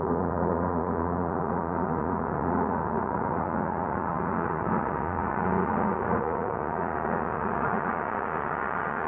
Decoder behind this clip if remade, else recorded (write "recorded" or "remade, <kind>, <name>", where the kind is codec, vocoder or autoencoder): remade, vocoder, Vocos